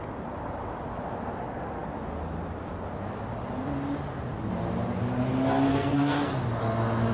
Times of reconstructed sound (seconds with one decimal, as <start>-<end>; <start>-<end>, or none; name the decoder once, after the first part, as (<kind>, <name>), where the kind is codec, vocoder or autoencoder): 5.7-6.3 (codec, SNAC)